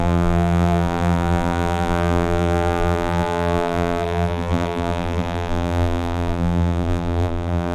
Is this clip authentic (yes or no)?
no